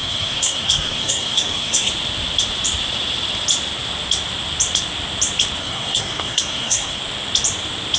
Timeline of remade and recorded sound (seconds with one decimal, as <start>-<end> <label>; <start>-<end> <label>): 0.0-1.9 remade; 1.9-5.6 recorded; 5.6-7.0 remade; 7.0-8.0 recorded